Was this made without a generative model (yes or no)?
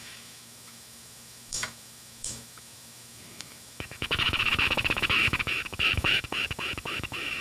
no